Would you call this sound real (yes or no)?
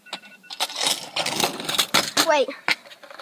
yes